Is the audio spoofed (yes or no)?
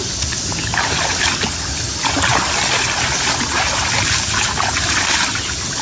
no